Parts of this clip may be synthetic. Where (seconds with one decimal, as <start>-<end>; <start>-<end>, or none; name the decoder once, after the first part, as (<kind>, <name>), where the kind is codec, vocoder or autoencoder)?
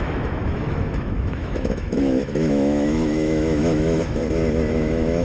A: 0.0-4.2 (autoencoder, DAC-VAE); 4.7-5.2